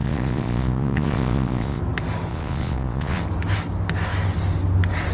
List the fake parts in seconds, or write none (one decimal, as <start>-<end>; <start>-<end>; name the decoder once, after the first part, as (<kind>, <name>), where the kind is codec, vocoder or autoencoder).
0.0-1.8 (vocoder, Vocos); 2.3-3.2

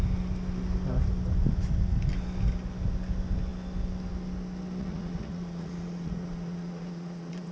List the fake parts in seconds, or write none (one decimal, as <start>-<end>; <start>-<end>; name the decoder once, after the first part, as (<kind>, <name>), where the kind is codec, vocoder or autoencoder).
4.8-7.5 (vocoder, Vocos)

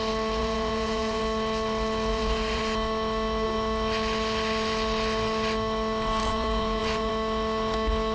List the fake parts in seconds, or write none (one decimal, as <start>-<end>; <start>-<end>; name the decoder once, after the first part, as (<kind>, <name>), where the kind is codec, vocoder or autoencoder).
0.4-1.2 (vocoder, Vocos); 2.1-2.6; 6.2-7.1

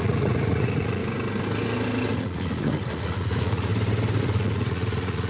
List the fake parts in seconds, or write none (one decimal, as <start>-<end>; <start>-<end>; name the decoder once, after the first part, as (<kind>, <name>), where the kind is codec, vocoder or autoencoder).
0.0-1.0 (vocoder, Vocos); 2.1-3.7; 4.2-5.3

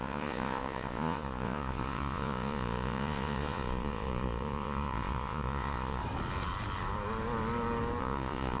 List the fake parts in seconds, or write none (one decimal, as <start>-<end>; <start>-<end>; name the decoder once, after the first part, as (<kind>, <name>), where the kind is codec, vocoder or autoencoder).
0.0-6.0 (vocoder, Vocos); 8.0-8.6

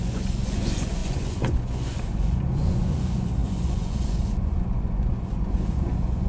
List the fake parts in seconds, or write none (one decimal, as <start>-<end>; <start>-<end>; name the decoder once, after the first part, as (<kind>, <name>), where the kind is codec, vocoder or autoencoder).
0.0-6.3 (vocoder, Vocos)

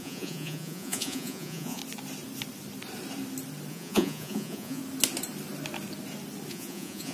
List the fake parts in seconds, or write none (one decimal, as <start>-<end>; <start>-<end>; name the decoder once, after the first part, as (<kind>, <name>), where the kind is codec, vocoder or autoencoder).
0.0-1.8 (vocoder, Vocos); 3.7-4.8; 6.5-7.1

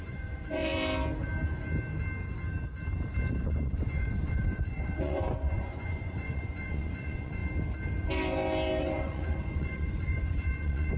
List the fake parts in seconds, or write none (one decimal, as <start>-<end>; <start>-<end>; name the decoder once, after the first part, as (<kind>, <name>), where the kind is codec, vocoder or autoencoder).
0.0-0.7 (vocoder, Vocos); 3.3-7.4; 8.8-11.0